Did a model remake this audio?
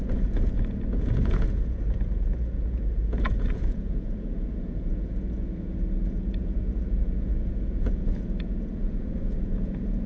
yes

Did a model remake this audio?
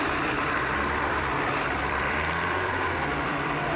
yes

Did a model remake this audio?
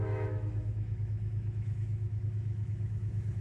yes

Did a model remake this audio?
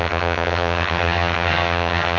yes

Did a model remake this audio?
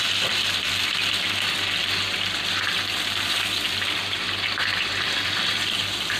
yes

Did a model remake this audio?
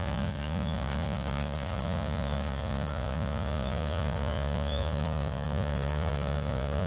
yes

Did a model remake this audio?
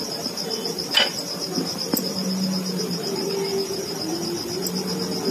no